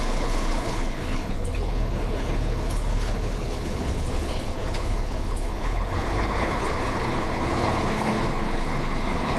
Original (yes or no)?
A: no